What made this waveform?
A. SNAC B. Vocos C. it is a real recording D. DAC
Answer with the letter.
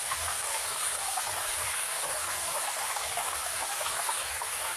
D